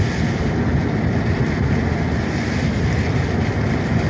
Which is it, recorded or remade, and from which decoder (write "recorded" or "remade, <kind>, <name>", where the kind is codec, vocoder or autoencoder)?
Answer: recorded